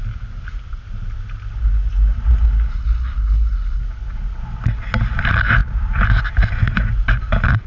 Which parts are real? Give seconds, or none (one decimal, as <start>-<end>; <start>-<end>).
0.0-2.7; 3.8-7.7